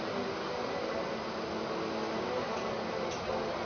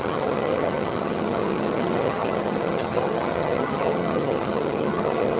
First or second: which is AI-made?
second